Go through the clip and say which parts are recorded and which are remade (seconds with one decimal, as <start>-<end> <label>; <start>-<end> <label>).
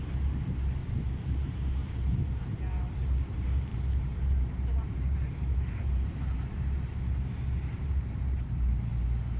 0.0-0.8 remade; 0.8-1.3 recorded; 1.3-1.8 remade; 1.8-2.4 recorded; 2.4-8.9 remade; 8.9-9.4 recorded